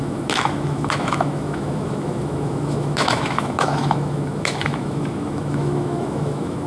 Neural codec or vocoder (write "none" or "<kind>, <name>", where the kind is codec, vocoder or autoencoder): autoencoder, DAC-VAE